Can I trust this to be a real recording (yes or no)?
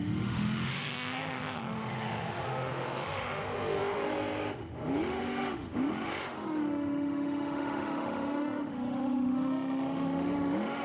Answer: no